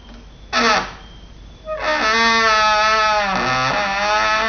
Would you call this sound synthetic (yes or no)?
no